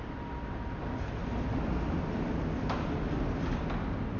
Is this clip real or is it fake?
real